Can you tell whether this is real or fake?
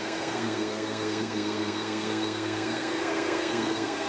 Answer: fake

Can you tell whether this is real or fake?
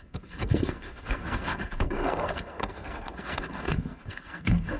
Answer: fake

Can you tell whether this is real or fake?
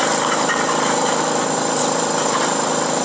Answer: fake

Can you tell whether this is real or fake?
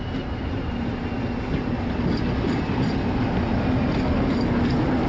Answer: real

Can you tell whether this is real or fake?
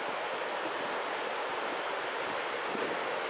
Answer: real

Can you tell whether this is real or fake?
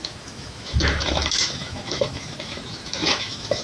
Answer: fake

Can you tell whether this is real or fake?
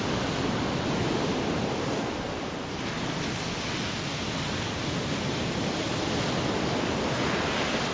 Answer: real